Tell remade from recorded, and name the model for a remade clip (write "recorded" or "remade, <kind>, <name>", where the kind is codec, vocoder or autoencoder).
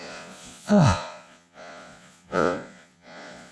remade, vocoder, Vocos